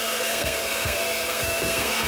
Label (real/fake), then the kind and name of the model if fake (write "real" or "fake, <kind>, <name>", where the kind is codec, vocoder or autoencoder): fake, codec, SNAC